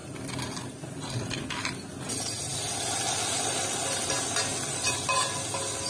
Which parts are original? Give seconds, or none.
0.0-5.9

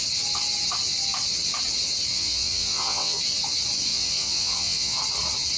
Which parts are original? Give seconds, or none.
0.0-2.1; 3.2-3.9; 5.0-5.6

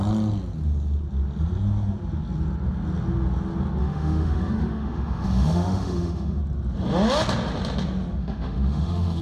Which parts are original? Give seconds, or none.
0.0-3.8; 6.4-8.2

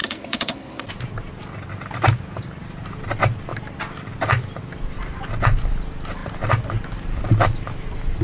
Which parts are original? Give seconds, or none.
0.9-8.2

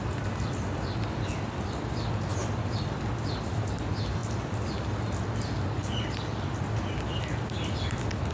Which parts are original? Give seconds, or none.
0.0-8.3

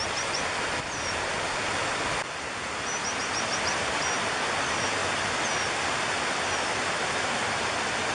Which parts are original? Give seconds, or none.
0.0-8.1

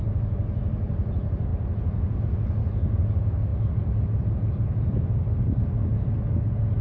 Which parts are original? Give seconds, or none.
0.0-6.8

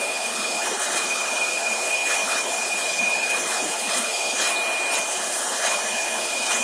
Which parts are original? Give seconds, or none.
4.5-5.1